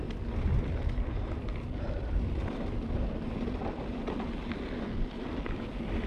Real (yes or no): yes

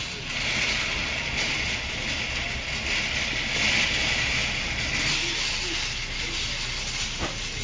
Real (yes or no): yes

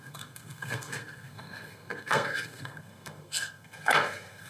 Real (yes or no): no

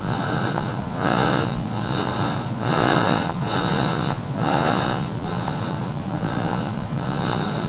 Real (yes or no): no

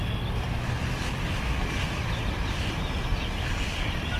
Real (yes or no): yes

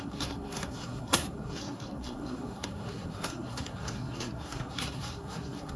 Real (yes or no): no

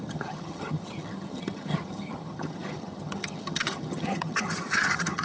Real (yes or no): no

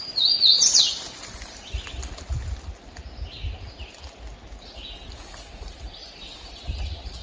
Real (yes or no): yes